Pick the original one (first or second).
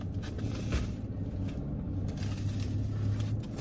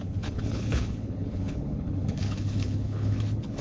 first